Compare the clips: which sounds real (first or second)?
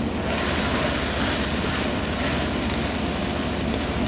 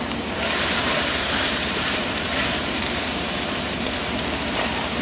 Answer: first